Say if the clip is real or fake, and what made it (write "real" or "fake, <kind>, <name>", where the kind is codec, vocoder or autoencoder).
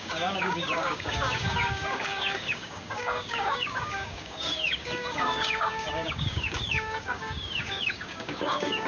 fake, codec, DAC